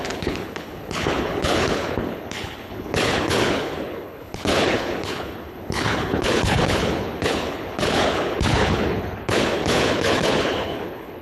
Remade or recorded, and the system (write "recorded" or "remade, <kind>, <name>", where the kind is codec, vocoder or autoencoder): remade, codec, HILCodec